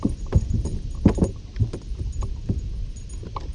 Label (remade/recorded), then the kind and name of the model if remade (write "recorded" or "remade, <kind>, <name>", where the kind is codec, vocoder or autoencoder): recorded